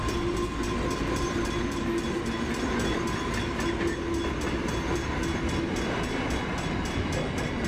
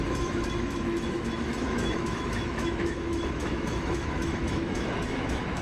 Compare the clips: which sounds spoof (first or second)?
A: second